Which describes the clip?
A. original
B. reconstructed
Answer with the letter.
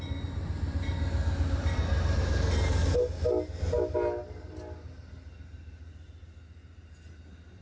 A